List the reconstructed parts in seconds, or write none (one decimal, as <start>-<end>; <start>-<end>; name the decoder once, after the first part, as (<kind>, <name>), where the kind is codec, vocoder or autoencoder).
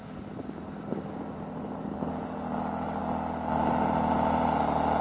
none